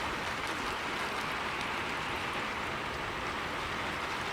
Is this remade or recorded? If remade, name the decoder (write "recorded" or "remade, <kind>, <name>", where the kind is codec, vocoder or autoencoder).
remade, vocoder, BigVGAN v2